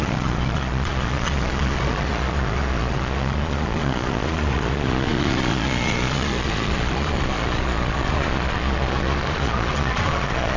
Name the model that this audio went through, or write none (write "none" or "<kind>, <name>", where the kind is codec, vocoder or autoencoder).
vocoder, Vocos